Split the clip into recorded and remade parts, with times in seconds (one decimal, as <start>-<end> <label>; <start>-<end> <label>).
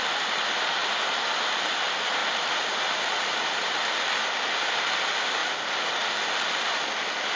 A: 0.0-0.8 remade; 0.8-1.3 recorded; 1.3-5.4 remade; 5.4-6.4 recorded; 6.4-7.4 remade